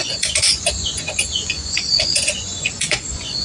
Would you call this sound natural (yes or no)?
no